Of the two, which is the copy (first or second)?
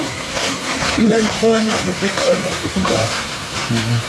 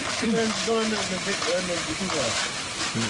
first